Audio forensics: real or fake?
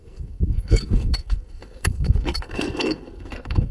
fake